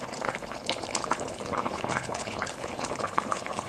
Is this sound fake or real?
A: fake